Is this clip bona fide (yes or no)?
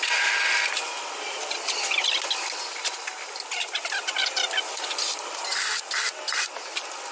yes